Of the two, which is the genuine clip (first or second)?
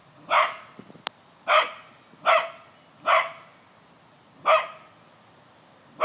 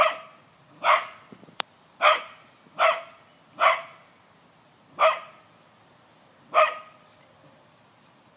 first